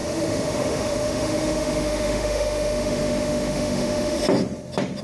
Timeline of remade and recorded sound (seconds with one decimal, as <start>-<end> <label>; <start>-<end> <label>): 0.0-4.2 remade; 4.2-5.0 recorded